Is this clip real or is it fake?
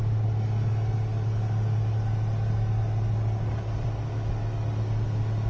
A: real